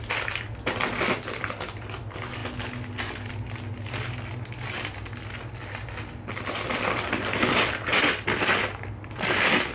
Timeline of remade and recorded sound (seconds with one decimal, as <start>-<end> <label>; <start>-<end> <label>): 0.0-9.7 recorded